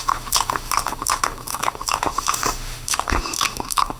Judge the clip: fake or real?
fake